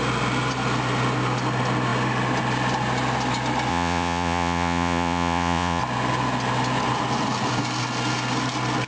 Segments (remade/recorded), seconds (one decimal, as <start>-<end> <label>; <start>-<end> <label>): 0.0-3.7 recorded; 3.7-5.8 remade; 5.8-8.9 recorded